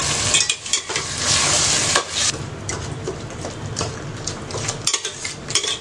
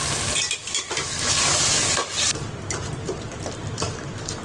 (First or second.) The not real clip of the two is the second